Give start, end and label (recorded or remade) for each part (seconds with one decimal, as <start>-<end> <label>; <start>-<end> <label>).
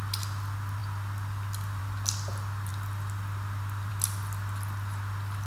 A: 0.0-5.5 recorded